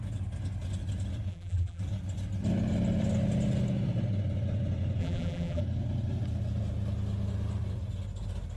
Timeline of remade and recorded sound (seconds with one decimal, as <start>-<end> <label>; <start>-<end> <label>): 0.0-1.3 recorded; 1.3-1.8 remade; 1.8-5.0 recorded; 5.0-5.6 remade; 5.6-8.6 recorded